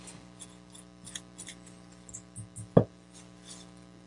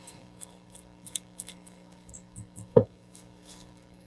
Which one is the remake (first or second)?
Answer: second